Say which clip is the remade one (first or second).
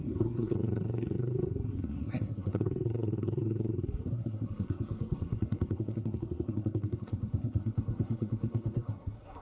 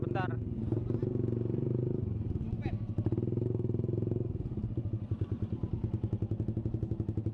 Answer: first